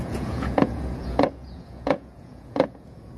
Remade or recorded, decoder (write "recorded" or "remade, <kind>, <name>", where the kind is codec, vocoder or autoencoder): remade, vocoder, Vocos